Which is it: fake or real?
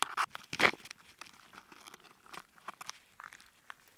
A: real